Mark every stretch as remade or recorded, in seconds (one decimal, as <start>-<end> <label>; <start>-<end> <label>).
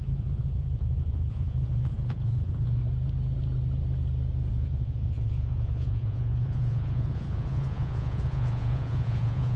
0.0-2.8 remade; 2.8-4.5 recorded; 4.5-9.6 remade